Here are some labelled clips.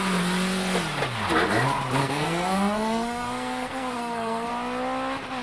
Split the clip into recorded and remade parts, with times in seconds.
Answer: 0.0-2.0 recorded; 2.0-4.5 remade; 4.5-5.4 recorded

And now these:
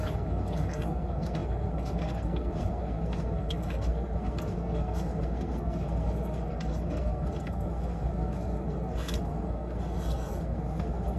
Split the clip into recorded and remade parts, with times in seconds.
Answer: 0.0-11.2 remade

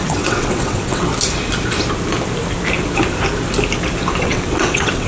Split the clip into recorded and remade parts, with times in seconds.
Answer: 0.0-1.1 remade; 1.1-4.2 recorded; 4.2-5.1 remade

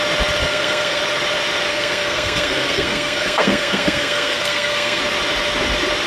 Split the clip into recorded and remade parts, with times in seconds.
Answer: 0.0-0.4 recorded; 0.4-1.0 remade; 1.0-1.7 recorded; 1.7-5.0 remade; 5.0-6.1 recorded

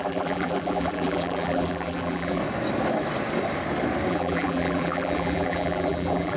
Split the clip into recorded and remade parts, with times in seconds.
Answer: 0.0-2.4 remade; 2.4-4.1 recorded; 4.1-6.4 remade

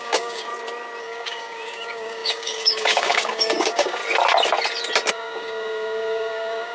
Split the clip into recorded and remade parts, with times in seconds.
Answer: 0.0-0.5 remade; 0.5-1.0 recorded; 1.0-4.0 remade; 4.0-5.1 recorded; 5.1-6.7 remade